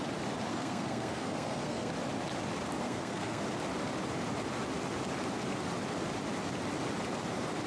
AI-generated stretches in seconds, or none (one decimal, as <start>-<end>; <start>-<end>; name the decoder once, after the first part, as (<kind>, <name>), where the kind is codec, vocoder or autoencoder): 0.5-1.9 (codec, SNAC); 2.8-3.4